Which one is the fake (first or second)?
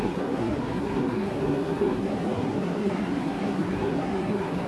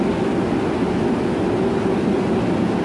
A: first